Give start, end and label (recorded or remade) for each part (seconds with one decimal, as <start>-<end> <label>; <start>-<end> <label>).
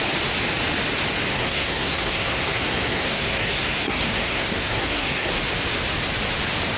0.0-1.3 recorded; 1.3-5.3 remade; 5.3-6.8 recorded